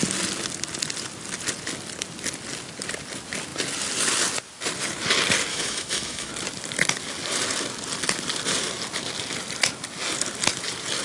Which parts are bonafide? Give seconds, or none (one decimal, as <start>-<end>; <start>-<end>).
0.0-5.5; 6.3-11.0